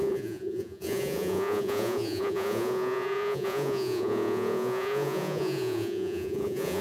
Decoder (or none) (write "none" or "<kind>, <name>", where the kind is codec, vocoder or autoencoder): vocoder, Vocos